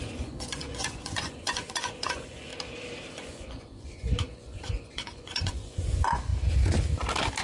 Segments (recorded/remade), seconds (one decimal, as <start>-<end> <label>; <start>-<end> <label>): 0.0-2.5 remade; 2.5-3.1 recorded; 3.1-6.3 remade; 6.3-7.4 recorded